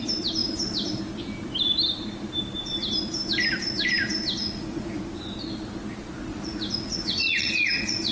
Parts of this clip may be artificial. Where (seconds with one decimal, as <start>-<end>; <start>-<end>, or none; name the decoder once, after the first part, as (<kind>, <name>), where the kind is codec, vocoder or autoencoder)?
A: 4.4-5.0 (vocoder, Vocos); 6.3-8.1